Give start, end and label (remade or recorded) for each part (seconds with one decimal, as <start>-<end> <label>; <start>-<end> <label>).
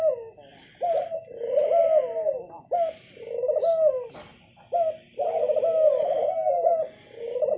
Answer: 0.0-7.6 recorded